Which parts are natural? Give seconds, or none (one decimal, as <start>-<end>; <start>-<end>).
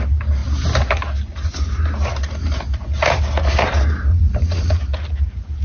0.0-4.1; 4.8-5.6